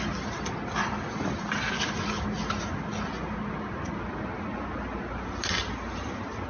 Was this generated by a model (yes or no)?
no